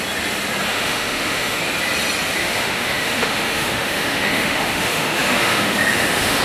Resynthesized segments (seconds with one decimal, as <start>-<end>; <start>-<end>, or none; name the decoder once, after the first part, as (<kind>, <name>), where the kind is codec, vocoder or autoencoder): 0.7-1.6 (autoencoder, DAC-VAE); 2.4-6.4

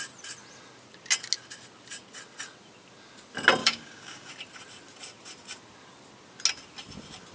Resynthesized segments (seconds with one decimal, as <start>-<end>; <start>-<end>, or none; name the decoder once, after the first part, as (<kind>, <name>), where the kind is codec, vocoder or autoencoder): 3.6-4.3 (codec, DAC)

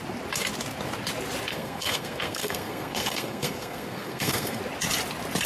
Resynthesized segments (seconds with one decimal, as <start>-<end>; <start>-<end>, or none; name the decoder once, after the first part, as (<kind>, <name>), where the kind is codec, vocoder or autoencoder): 1.5-4.6 (codec, SNAC)